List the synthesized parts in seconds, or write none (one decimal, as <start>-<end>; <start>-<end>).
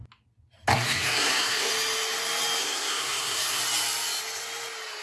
0.7-1.7; 2.6-3.6